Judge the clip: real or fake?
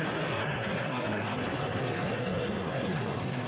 fake